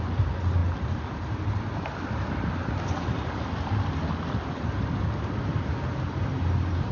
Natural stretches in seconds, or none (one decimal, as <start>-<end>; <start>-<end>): 0.0-6.9